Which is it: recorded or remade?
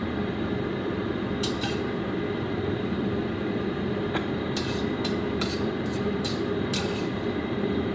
remade